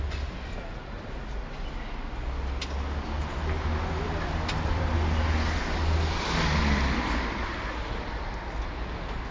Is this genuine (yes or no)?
yes